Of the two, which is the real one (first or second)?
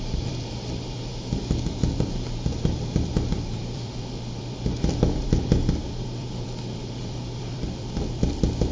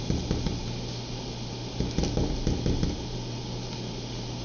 second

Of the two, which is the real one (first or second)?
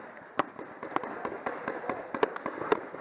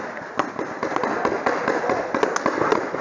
second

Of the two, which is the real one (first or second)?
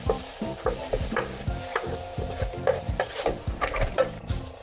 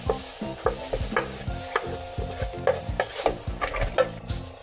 second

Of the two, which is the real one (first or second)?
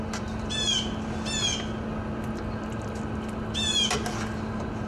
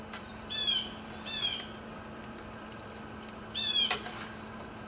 first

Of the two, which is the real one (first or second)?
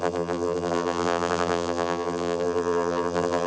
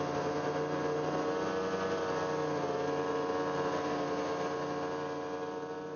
second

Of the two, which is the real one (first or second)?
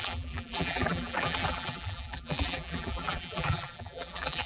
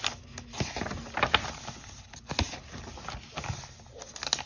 second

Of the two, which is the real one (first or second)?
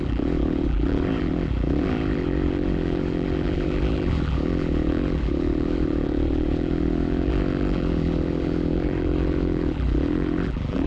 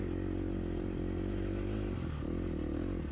second